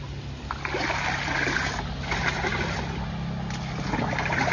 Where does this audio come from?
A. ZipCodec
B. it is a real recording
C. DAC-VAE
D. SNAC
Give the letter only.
B